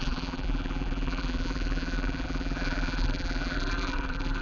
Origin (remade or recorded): remade